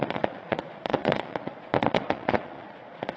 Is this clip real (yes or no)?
no